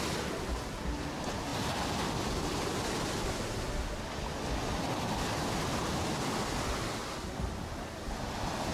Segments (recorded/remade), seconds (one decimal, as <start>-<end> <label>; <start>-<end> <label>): 0.0-8.7 recorded

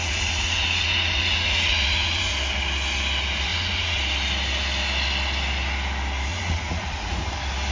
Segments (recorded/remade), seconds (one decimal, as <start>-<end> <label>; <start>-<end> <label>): 0.0-2.3 remade; 2.3-3.5 recorded; 3.5-4.0 remade; 4.0-6.3 recorded; 6.3-7.2 remade; 7.2-7.7 recorded

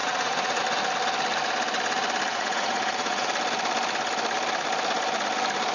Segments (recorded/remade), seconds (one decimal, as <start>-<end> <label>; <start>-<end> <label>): 0.0-0.6 remade; 0.6-2.3 recorded; 2.3-3.3 remade; 3.3-5.7 recorded